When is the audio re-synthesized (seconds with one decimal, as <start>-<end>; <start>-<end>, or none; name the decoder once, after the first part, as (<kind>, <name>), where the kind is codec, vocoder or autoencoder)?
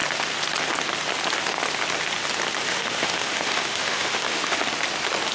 2.7-4.6 (autoencoder, DAC-VAE)